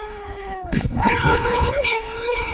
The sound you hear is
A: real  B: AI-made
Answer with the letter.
B